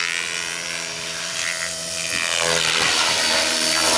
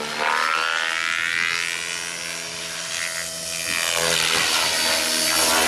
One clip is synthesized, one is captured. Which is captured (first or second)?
second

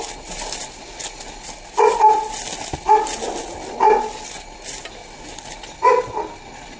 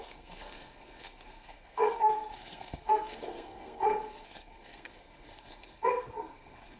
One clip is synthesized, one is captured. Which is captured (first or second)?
first